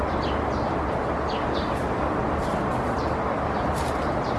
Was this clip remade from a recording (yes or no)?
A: no